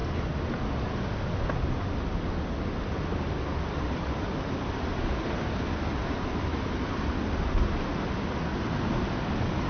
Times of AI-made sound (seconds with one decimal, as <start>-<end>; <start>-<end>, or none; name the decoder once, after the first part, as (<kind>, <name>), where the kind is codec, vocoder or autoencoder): none